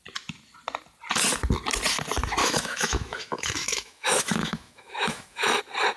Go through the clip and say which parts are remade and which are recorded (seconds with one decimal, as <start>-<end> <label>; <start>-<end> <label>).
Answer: 0.0-2.4 recorded; 2.4-5.6 remade; 5.6-6.0 recorded